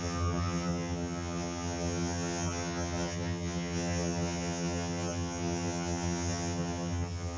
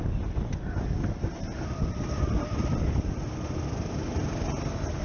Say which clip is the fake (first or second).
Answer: first